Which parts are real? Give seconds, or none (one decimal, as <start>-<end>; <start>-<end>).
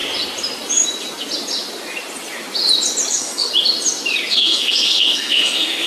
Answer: 0.0-3.1; 3.5-4.3